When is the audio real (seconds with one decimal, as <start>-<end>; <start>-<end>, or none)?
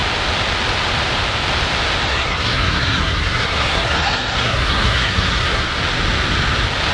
0.0-2.1; 5.8-6.9